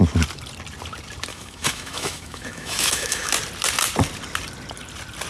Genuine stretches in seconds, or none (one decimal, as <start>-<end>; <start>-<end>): 0.0-1.3; 3.3-5.3